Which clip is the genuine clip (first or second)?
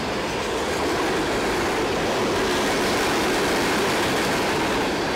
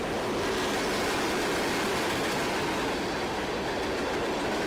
second